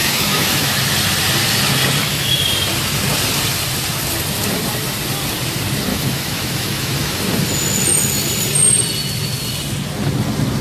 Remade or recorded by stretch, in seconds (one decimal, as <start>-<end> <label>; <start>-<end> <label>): 0.0-0.8 remade; 0.8-2.0 recorded; 2.0-2.5 remade; 2.5-5.9 recorded; 5.9-7.2 remade; 7.2-10.6 recorded